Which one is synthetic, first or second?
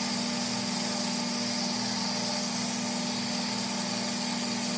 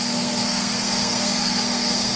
second